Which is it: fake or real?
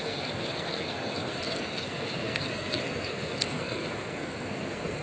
fake